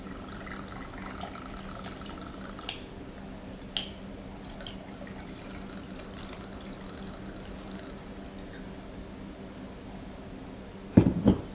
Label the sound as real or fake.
real